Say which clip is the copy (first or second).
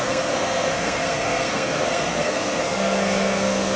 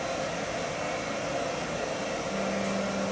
first